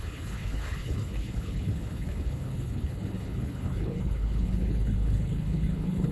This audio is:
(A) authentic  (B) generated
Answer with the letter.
B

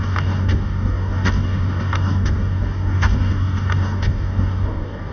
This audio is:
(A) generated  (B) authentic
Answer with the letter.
A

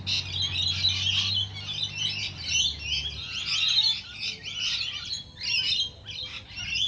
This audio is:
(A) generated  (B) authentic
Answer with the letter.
B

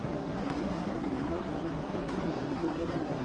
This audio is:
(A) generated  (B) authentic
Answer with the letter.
A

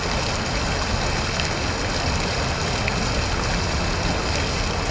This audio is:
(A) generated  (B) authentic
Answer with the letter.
B